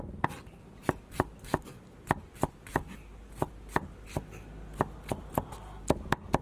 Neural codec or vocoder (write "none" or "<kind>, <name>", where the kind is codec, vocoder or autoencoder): none